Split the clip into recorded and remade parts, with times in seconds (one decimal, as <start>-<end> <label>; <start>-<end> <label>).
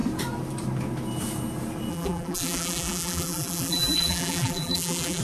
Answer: 0.0-1.9 recorded; 1.9-5.2 remade